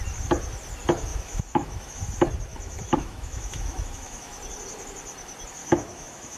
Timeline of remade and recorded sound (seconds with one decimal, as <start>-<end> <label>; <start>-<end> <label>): 0.0-1.1 recorded; 1.1-2.0 remade; 2.0-2.5 recorded; 2.5-4.4 remade; 4.4-5.6 recorded; 5.6-6.4 remade